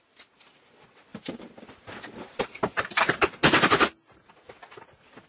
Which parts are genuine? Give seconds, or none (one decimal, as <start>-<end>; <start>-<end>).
0.0-1.1; 4.3-5.3

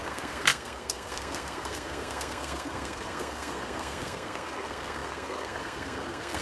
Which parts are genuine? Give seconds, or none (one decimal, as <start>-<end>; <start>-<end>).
none